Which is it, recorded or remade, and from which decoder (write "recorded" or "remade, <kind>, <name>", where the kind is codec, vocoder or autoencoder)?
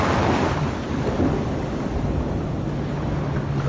recorded